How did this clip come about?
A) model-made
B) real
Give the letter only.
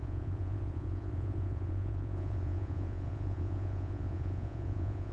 A